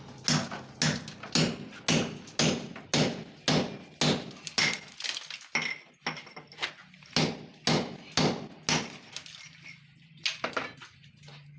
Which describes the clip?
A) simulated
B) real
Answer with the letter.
B